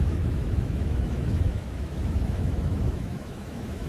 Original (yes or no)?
no